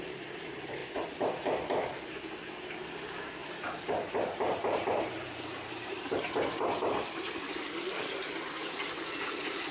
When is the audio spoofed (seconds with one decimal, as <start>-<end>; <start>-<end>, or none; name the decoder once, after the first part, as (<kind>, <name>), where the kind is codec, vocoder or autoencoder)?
3.4-6.7 (vocoder, BigVGAN v2)